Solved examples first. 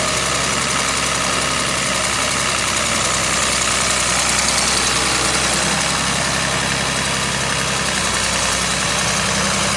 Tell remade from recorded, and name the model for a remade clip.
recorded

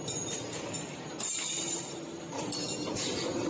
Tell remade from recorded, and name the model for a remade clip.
remade, vocoder, BigVGAN v2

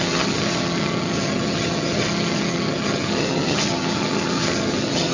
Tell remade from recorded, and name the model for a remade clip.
remade, vocoder, HiFi-GAN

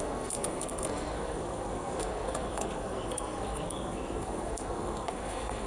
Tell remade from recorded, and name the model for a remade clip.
remade, codec, SNAC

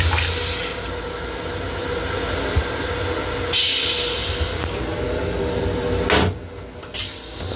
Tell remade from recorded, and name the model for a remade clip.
recorded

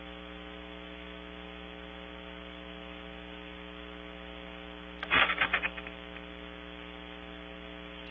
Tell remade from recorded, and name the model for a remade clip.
recorded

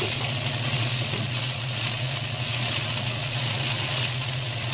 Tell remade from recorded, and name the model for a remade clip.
remade, vocoder, Vocos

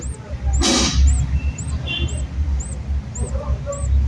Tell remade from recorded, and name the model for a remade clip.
recorded